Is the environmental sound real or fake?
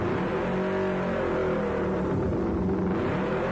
real